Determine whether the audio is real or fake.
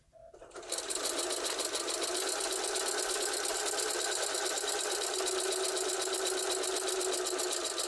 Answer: real